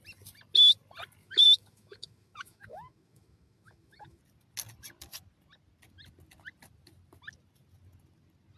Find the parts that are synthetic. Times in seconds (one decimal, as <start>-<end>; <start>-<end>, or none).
1.2-4.2